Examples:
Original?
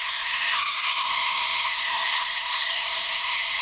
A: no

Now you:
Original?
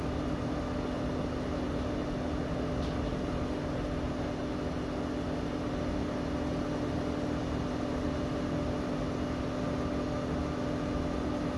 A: yes